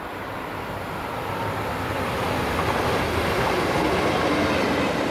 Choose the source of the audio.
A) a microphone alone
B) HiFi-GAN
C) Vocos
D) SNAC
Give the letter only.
A